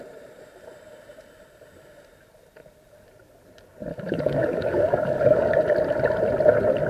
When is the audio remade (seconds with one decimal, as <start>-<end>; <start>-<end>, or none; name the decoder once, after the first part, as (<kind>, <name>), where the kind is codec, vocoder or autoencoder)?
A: 3.9-5.5 (codec, DAC)